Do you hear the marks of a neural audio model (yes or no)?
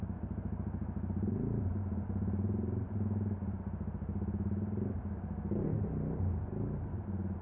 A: no